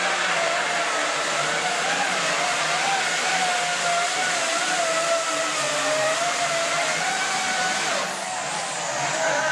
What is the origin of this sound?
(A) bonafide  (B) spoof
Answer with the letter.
B